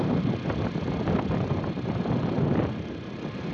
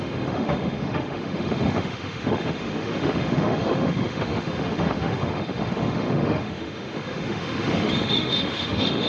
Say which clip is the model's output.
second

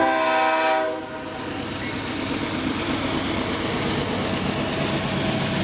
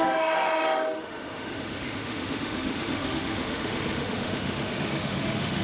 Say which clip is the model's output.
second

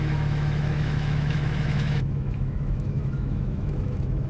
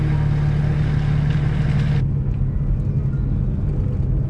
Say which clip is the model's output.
first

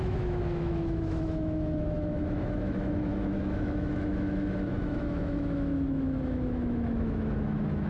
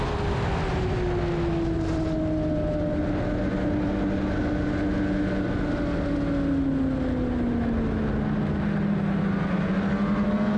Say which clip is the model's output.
first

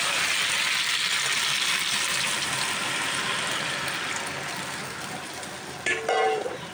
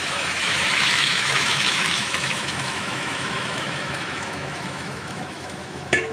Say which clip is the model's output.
second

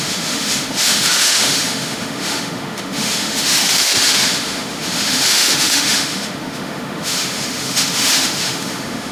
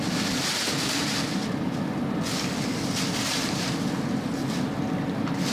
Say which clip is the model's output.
first